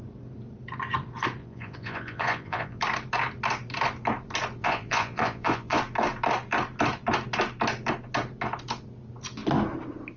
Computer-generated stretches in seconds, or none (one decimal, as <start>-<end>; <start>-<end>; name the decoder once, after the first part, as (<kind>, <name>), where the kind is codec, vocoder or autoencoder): 1.4-2.8 (vocoder, Vocos); 4.6-5.8